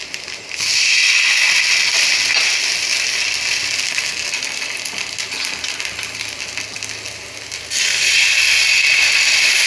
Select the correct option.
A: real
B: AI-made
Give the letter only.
A